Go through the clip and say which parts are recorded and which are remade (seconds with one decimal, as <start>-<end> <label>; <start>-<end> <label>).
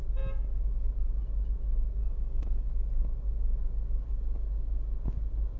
0.0-2.0 recorded; 2.0-2.7 remade; 2.7-5.6 recorded